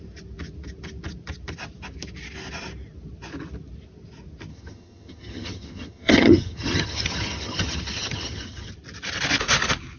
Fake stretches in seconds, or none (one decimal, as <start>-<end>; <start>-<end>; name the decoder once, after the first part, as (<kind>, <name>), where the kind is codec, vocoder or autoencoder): 4.5-8.7 (vocoder, HiFi-GAN)